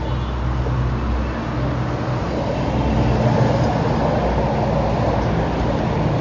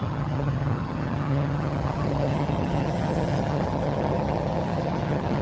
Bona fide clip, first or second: first